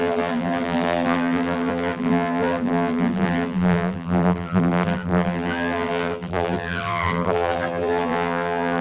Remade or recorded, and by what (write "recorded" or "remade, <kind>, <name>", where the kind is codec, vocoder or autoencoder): remade, vocoder, BigVGAN v2